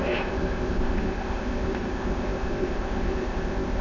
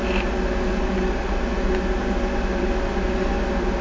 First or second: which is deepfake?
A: first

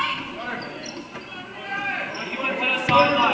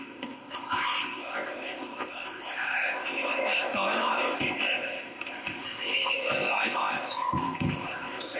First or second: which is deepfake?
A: second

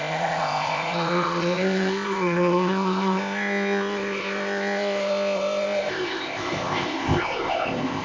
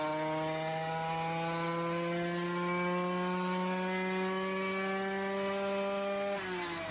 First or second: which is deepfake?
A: first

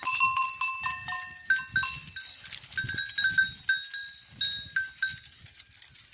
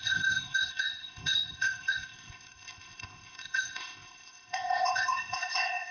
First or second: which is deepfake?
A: second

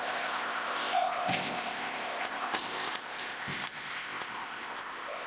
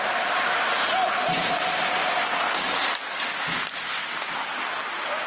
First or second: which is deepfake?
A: first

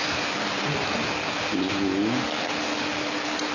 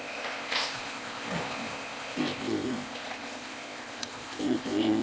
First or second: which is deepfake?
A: second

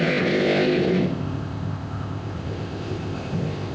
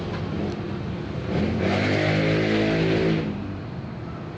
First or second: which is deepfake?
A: first